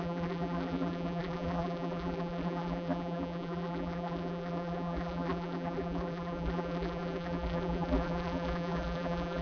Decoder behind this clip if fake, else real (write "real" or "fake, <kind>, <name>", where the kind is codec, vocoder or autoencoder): fake, vocoder, BigVGAN v2